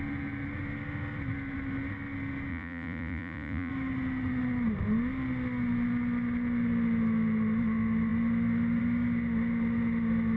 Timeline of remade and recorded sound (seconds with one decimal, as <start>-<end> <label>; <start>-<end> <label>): 0.0-2.5 recorded; 2.5-3.7 remade; 3.7-10.4 recorded